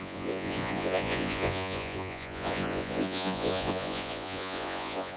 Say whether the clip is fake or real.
fake